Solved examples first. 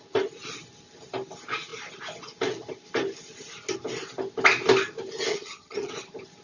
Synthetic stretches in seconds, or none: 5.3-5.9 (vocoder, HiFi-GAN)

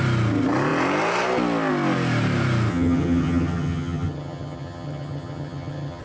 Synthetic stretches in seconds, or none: 2.7-6.0 (vocoder, HiFi-GAN)